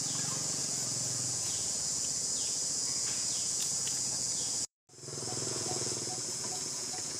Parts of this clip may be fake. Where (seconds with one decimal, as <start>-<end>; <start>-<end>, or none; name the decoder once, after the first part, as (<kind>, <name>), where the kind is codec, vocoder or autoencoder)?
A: 0.0-4.8 (vocoder, Vocos); 5.5-7.2